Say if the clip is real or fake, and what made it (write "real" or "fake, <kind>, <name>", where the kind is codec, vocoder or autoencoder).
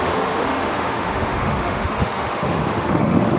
fake, autoencoder, DAC-VAE